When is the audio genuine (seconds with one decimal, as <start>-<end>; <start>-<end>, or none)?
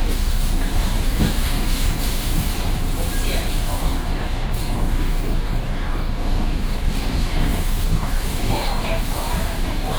2.5-3.5